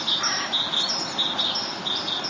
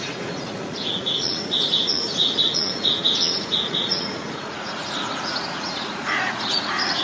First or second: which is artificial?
second